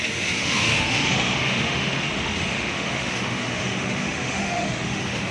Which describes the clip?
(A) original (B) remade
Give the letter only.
B